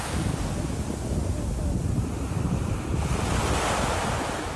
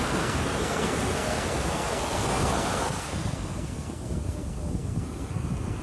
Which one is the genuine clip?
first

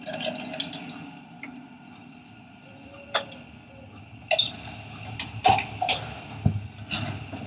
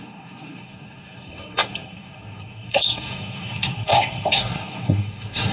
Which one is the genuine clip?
first